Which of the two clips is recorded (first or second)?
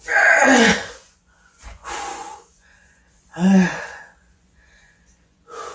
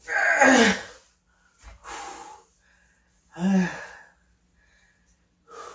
second